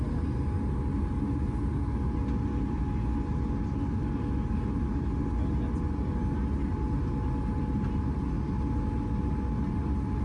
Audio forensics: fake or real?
real